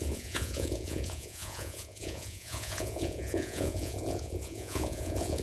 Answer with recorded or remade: remade